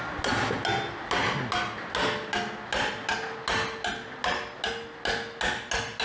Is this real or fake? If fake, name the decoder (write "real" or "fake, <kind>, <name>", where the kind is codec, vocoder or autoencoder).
real